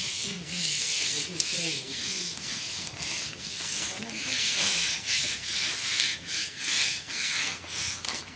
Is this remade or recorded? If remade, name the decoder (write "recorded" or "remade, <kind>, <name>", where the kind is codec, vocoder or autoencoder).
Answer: remade, codec, SNAC